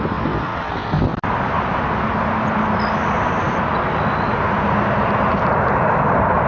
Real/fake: real